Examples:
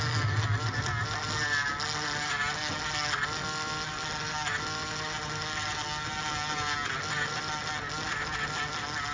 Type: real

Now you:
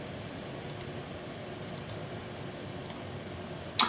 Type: real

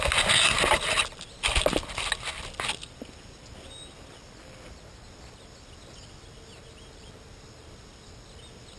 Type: real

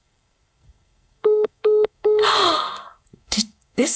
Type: fake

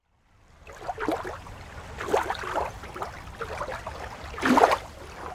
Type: real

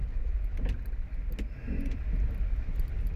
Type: real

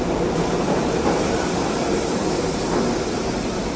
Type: real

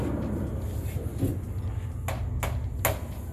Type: real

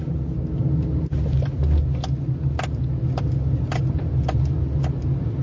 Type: real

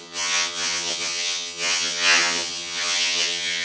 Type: fake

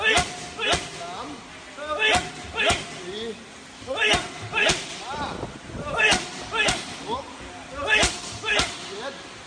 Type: real